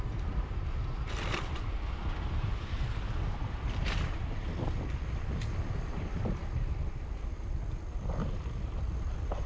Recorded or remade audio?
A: remade